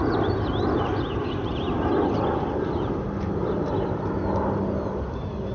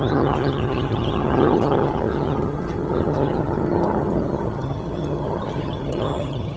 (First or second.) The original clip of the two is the first